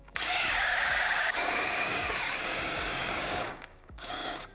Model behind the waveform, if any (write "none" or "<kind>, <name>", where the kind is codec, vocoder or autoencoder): codec, DAC